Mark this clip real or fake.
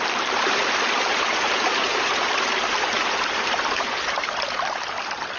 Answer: real